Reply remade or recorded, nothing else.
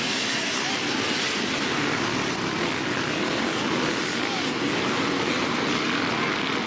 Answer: recorded